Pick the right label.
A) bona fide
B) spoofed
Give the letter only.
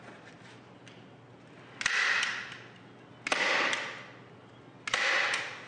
A